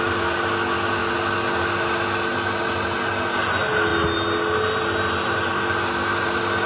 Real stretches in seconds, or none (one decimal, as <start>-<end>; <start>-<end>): 0.0-6.7